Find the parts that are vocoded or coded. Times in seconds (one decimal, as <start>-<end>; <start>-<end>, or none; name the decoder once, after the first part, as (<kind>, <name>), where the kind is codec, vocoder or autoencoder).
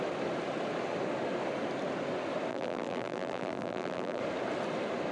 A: 2.5-4.2 (vocoder, BigVGAN v2)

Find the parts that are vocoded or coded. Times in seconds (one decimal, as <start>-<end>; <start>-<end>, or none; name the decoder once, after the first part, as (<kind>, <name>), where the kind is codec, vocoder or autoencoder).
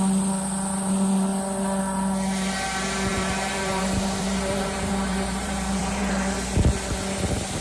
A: 3.1-6.1 (vocoder, BigVGAN v2)